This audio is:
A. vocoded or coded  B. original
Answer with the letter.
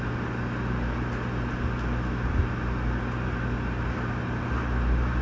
B